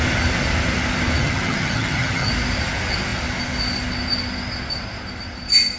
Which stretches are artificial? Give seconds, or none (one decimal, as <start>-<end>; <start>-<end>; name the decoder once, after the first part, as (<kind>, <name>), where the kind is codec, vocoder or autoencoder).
1.2-2.3 (vocoder, HiFi-GAN)